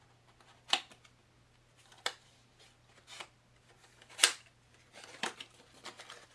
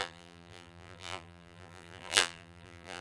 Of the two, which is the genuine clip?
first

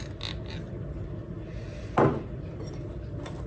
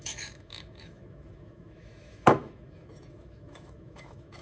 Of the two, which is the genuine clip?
first